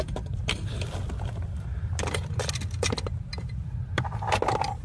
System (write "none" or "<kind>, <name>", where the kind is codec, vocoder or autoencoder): none